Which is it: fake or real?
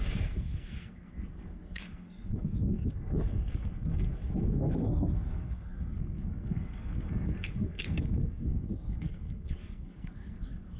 fake